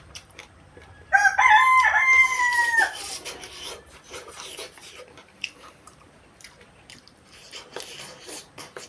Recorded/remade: remade